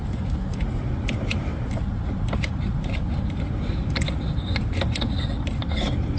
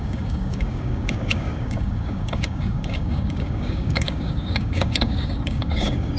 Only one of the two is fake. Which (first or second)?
second